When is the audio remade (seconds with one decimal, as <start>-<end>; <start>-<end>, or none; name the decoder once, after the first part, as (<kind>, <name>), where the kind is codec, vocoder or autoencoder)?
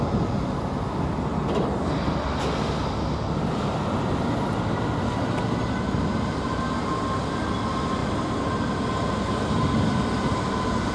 1.3-2.4 (vocoder, BigVGAN v2)